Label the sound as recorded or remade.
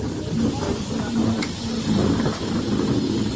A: recorded